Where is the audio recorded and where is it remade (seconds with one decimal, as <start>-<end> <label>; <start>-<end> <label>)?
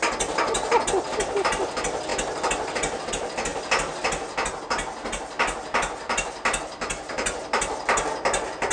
0.0-8.7 recorded